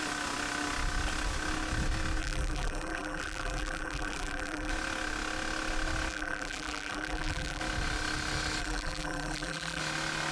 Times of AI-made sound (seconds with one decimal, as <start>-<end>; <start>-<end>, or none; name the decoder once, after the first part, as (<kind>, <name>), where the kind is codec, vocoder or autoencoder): 2.2-4.7 (vocoder, BigVGAN v2); 6.1-7.6; 8.6-9.8